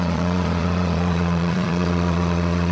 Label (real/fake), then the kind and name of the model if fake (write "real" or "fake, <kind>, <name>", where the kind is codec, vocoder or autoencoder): fake, vocoder, Vocos